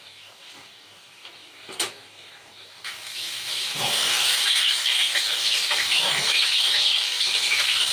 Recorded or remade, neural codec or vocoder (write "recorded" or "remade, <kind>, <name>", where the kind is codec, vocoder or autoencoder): remade, codec, DAC